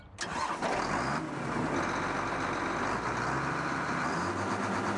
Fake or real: real